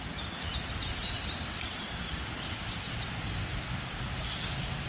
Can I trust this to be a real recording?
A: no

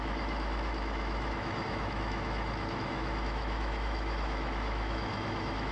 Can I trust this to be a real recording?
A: no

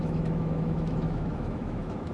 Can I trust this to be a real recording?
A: no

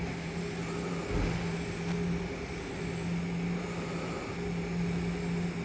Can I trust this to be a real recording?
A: yes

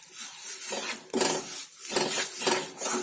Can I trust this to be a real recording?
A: yes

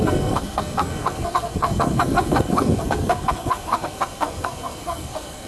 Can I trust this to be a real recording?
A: no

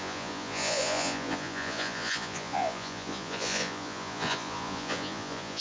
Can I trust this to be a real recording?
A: no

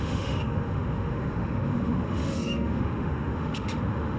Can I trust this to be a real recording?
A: no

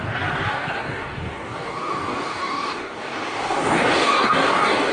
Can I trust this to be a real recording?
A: no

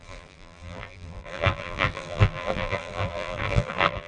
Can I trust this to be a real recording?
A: no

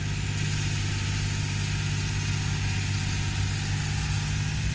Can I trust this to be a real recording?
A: yes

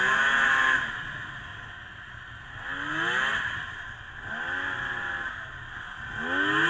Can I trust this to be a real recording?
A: yes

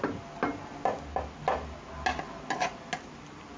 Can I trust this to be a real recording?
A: yes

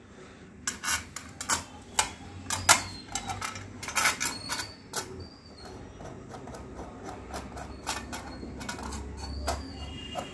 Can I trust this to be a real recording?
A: yes